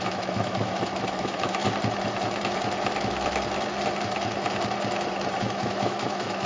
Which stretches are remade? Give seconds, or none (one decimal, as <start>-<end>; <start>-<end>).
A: 0.0-1.6; 5.4-6.5